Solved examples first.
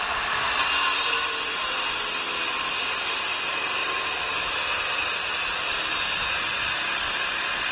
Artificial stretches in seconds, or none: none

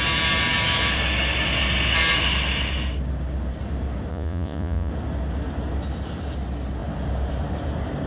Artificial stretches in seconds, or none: 4.1-4.9 (vocoder, Vocos)

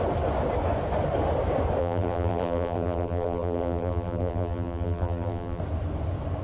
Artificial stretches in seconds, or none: 1.8-5.6 (vocoder, BigVGAN v2)